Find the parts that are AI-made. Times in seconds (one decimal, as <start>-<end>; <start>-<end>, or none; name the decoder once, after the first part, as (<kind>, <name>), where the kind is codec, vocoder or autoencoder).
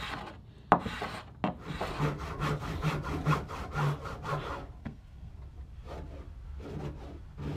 4.8-5.3 (codec, SNAC)